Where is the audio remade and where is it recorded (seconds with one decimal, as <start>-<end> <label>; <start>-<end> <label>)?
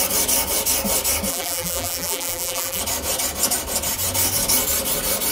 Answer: 0.0-1.3 recorded; 1.3-2.8 remade; 2.8-5.3 recorded